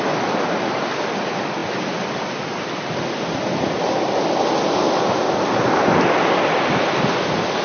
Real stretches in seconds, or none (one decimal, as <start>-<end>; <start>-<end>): 0.0-7.6